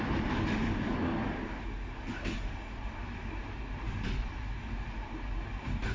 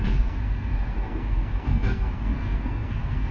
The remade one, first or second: second